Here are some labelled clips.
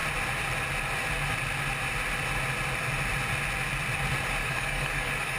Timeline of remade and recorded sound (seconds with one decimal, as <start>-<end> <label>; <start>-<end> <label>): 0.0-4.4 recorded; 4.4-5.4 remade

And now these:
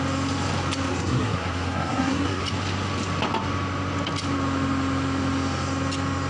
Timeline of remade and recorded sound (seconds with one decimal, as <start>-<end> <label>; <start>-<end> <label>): 0.0-0.9 recorded; 0.9-2.4 remade; 2.4-6.3 recorded

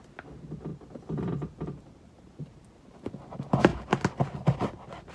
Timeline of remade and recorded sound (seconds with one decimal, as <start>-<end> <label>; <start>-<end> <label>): 0.0-0.7 recorded; 0.7-2.5 remade; 2.5-5.1 recorded

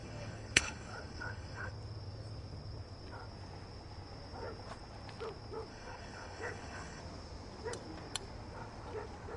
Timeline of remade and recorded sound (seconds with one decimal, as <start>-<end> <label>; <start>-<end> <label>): 0.0-1.7 remade; 1.7-5.7 recorded; 5.7-7.0 remade; 7.0-9.4 recorded

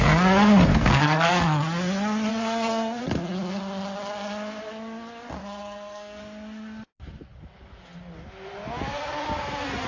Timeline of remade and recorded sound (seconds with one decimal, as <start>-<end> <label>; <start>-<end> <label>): 0.0-0.7 recorded; 0.7-1.3 remade; 1.3-2.3 recorded; 2.3-3.0 remade; 3.0-5.4 recorded; 5.4-6.2 remade; 6.2-9.9 recorded

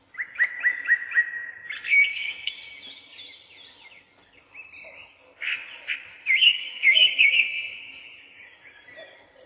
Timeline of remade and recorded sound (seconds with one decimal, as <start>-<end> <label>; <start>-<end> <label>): 0.0-1.9 recorded; 1.9-2.5 remade; 2.5-6.4 recorded; 6.4-8.0 remade; 8.0-9.5 recorded